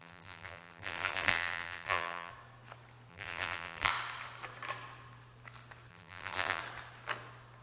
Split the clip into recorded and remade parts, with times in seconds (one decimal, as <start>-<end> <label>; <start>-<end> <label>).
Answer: 0.0-2.3 remade; 2.3-3.1 recorded; 3.1-3.9 remade; 3.9-5.9 recorded; 5.9-6.6 remade; 6.6-7.6 recorded